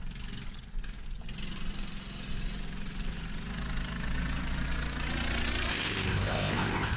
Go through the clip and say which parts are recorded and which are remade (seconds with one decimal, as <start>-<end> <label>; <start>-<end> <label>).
0.0-5.7 recorded; 5.7-7.0 remade